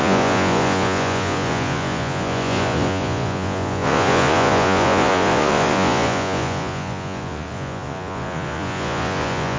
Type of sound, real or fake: fake